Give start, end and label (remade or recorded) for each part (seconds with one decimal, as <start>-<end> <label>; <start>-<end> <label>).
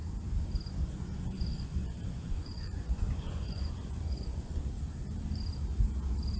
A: 0.0-0.8 recorded; 0.8-4.6 remade; 4.6-6.4 recorded